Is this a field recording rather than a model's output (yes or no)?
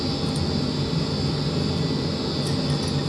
yes